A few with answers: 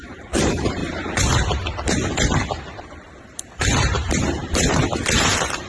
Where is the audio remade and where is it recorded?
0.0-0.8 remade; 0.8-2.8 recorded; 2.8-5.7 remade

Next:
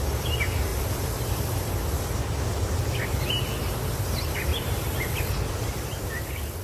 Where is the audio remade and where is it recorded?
0.0-4.5 recorded; 4.5-5.2 remade; 5.2-6.6 recorded

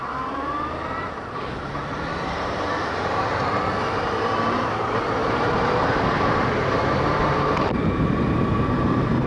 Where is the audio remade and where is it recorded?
0.0-9.3 remade

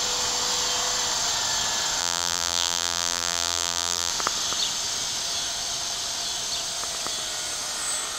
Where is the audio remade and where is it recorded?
0.0-2.0 recorded; 2.0-4.1 remade; 4.1-8.2 recorded

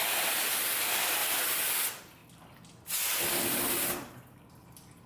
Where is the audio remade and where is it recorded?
0.0-1.2 recorded; 1.2-1.8 remade; 1.8-5.1 recorded

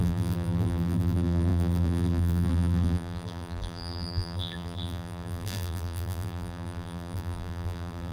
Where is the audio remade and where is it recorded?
0.0-8.1 remade

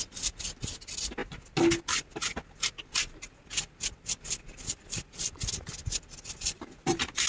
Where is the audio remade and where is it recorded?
0.0-7.3 recorded